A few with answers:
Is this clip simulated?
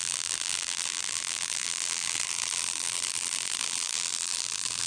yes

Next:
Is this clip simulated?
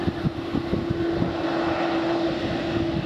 no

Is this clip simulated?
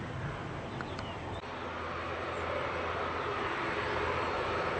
no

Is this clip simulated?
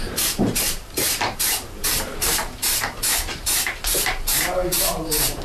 yes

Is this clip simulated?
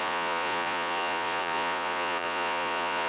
yes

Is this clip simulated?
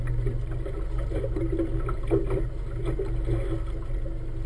no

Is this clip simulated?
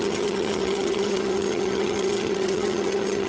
yes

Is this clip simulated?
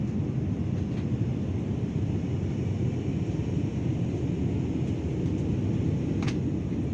no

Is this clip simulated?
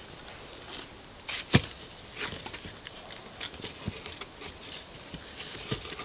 no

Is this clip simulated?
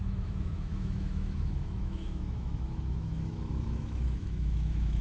yes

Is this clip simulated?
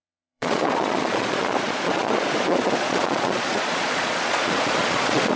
yes